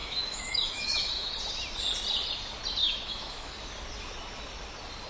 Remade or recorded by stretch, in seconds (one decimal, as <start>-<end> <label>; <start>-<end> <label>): 0.0-1.3 remade; 1.3-2.8 recorded; 2.8-3.5 remade; 3.5-5.1 recorded